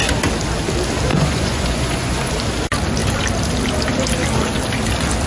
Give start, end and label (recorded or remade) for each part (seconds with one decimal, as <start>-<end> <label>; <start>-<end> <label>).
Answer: 0.0-1.1 recorded; 1.1-2.3 remade; 2.3-5.3 recorded